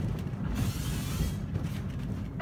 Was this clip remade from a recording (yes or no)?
no